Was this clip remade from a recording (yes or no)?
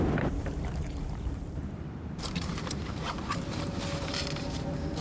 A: yes